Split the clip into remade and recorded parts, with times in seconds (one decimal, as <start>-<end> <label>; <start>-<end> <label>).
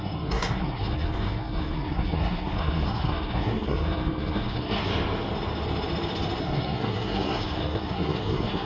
0.0-4.9 remade; 4.9-6.4 recorded; 6.4-8.7 remade